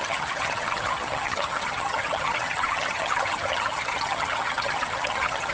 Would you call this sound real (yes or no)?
no